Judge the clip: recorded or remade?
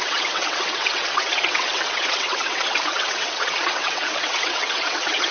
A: remade